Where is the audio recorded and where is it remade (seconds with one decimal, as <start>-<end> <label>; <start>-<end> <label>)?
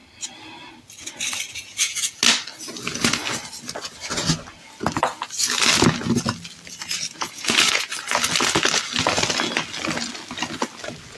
0.0-1.5 recorded; 1.5-2.2 remade; 2.2-7.1 recorded; 7.1-7.9 remade; 7.9-11.2 recorded